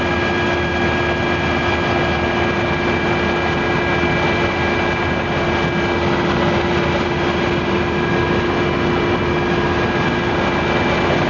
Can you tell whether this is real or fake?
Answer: real